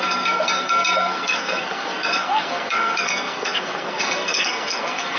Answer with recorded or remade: remade